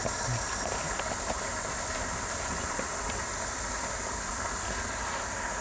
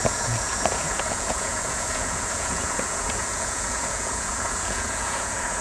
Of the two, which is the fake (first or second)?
second